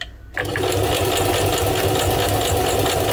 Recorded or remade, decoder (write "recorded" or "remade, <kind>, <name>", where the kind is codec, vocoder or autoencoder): recorded